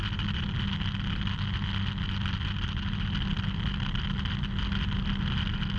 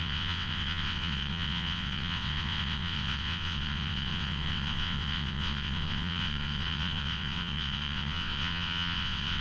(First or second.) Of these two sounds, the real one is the first